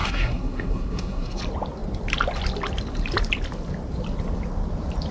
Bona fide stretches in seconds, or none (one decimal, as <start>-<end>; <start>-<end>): 1.4-5.1